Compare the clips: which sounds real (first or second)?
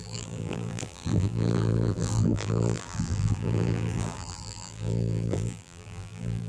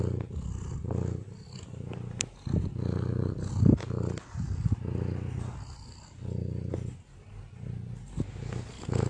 second